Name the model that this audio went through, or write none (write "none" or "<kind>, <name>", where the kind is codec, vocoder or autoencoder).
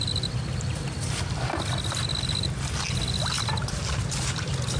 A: none